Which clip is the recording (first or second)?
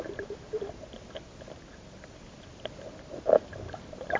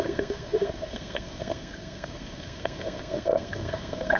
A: first